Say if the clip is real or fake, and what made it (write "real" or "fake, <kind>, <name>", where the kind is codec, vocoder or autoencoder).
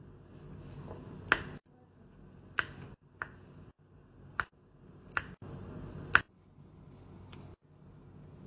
real